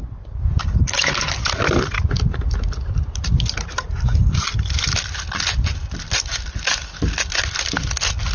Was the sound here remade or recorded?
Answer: recorded